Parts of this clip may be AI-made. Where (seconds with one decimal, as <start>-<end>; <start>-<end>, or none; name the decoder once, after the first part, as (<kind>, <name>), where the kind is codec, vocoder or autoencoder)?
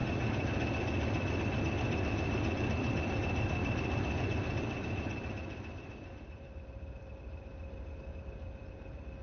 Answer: 0.0-1.4 (vocoder, BigVGAN v2); 3.6-7.1; 8.1-9.2